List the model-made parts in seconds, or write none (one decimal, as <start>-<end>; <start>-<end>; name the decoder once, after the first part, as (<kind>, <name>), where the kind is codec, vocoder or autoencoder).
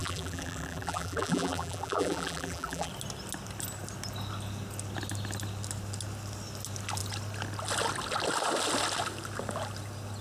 0.0-2.9 (vocoder, BigVGAN v2)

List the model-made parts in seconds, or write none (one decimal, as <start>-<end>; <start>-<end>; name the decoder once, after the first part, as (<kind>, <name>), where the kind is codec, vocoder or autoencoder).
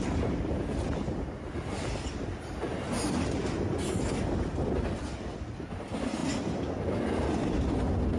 none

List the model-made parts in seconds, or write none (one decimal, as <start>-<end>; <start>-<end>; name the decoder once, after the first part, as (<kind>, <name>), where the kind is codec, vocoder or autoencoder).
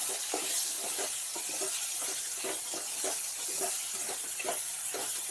none